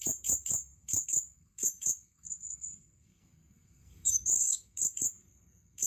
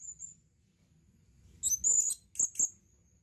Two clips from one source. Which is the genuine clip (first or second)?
second